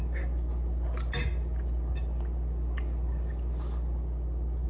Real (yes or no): yes